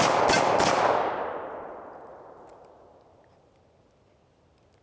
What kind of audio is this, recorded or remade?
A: recorded